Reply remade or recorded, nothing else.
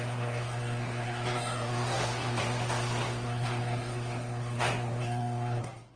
remade